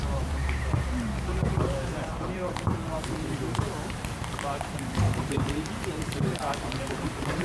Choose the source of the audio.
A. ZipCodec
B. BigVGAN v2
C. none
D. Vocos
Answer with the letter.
B